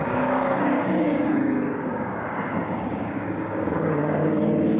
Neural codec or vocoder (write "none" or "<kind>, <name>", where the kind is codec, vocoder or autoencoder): codec, DAC